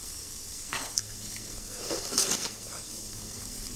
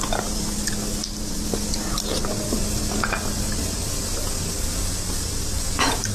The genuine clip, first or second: second